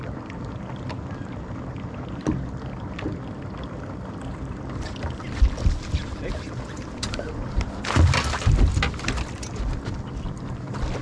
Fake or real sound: real